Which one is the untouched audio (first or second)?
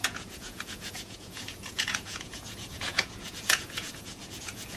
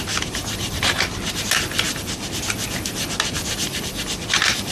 second